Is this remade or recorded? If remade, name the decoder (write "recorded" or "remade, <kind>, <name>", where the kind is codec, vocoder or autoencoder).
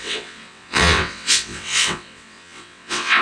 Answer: remade, vocoder, WaveNeXt